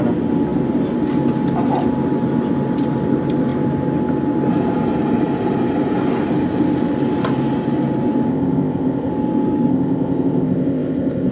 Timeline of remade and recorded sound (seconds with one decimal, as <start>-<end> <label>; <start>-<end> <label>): 0.0-8.3 recorded; 8.3-9.1 remade; 9.1-9.7 recorded; 9.7-11.3 remade